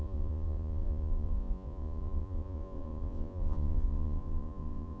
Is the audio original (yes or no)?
no